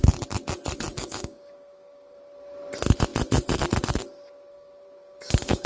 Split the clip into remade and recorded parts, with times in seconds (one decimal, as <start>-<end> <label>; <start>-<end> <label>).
0.0-0.9 recorded; 0.9-2.2 remade; 2.2-4.5 recorded; 4.5-5.7 remade